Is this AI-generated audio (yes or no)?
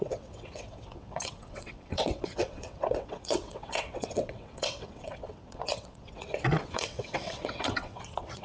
yes